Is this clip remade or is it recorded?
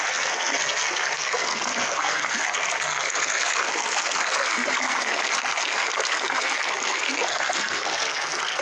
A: remade